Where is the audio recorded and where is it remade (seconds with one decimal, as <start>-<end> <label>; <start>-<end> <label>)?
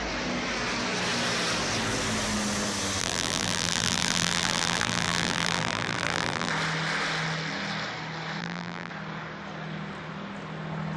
0.0-3.0 recorded; 3.0-6.5 remade; 6.5-8.4 recorded; 8.4-8.9 remade; 8.9-11.0 recorded